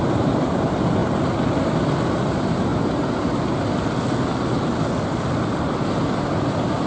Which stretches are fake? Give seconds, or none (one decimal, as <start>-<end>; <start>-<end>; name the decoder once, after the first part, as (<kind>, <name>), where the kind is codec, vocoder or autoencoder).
none